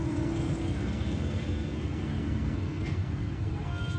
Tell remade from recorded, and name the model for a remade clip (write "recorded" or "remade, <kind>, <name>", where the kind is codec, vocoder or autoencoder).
remade, codec, SNAC